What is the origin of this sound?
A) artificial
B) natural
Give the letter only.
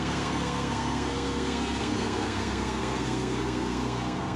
A